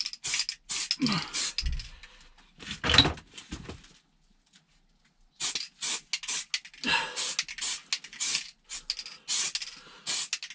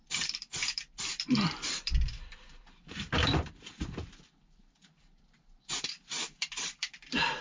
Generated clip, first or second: second